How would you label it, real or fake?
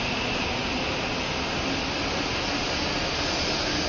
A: real